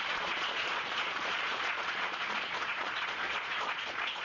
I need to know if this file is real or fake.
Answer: fake